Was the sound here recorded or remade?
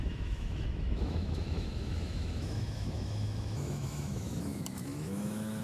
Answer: remade